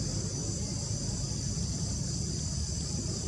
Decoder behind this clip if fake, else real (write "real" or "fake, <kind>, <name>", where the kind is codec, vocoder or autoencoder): real